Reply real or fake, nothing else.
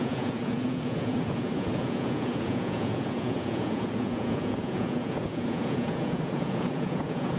fake